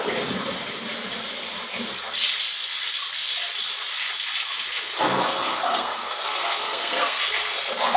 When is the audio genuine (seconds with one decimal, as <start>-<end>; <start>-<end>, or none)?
0.0-5.7; 7.2-8.0